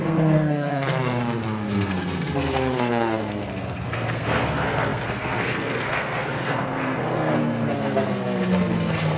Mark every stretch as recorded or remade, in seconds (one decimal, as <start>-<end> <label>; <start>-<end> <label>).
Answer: 0.0-9.2 remade